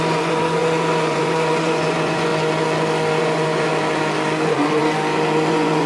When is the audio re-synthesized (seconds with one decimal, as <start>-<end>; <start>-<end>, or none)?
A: 0.0-2.3; 3.2-3.7; 5.5-5.9